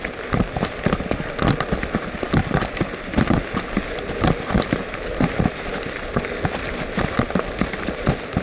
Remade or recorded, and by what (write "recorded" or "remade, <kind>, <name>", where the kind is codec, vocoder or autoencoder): recorded